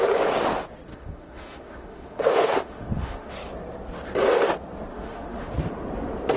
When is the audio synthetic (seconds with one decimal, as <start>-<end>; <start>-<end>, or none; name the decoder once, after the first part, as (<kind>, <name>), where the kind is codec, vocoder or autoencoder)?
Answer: 0.9-3.3 (autoencoder, DAC-VAE); 4.9-5.5